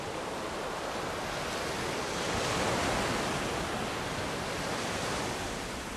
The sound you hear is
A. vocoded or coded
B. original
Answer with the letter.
B